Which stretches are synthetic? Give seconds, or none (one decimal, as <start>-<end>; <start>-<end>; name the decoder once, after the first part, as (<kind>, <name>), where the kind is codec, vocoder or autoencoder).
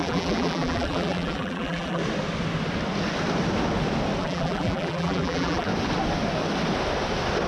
0.0-2.0 (vocoder, BigVGAN v2); 4.2-5.7